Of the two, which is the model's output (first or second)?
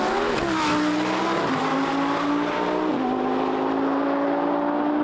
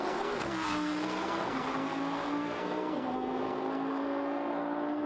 second